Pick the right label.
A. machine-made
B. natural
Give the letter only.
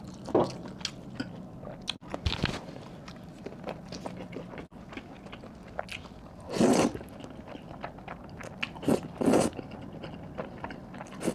B